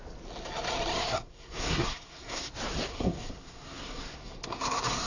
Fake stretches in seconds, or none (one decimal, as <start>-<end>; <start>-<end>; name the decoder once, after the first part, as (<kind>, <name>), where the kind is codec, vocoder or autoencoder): 1.0-2.5 (codec, SNAC); 2.9-5.1